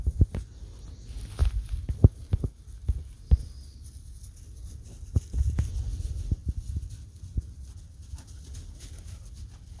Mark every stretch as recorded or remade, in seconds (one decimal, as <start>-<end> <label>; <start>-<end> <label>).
0.0-9.8 recorded